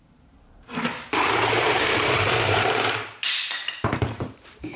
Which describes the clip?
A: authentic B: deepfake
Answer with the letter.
B